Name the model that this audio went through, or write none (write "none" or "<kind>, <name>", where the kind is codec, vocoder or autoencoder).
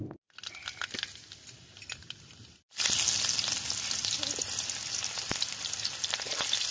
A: none